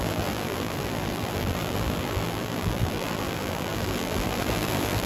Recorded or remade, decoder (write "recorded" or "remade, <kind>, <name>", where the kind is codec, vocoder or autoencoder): remade, vocoder, BigVGAN v2